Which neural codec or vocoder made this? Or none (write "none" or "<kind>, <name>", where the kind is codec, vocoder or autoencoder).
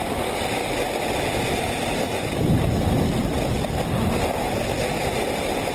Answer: none